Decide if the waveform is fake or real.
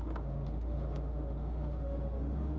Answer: fake